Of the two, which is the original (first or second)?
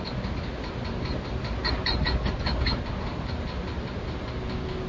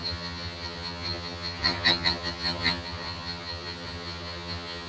first